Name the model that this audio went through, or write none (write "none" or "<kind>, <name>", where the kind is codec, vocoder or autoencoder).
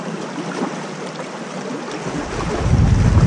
none